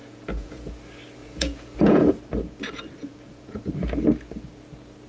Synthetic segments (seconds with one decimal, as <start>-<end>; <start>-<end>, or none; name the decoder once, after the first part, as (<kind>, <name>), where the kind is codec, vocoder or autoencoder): 0.0-0.7 (vocoder, Vocos); 1.2-2.1; 3.0-3.7

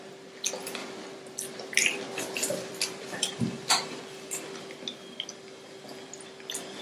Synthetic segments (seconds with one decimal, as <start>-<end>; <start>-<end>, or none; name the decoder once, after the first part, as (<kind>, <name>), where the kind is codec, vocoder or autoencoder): 0.8-4.0 (vocoder, BigVGAN v2)

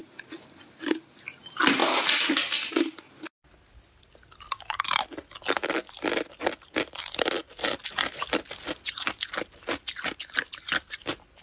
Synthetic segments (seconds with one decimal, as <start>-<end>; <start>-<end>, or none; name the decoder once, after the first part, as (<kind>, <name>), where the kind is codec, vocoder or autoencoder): 0.0-1.4 (vocoder, BigVGAN v2); 1.8-3.1

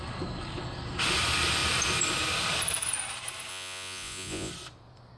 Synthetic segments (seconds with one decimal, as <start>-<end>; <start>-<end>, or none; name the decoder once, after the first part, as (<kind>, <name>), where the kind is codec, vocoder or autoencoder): 3.5-4.5 (vocoder, Vocos)

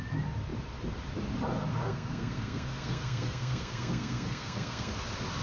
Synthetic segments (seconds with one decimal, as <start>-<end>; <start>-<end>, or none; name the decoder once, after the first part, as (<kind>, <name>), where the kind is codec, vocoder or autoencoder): 1.7-4.9 (codec, SNAC)